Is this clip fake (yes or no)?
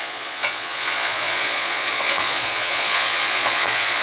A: yes